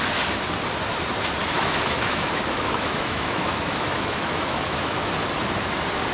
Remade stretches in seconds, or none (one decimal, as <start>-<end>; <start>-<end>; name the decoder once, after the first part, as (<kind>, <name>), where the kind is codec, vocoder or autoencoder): 1.4-5.1 (autoencoder, DAC-VAE)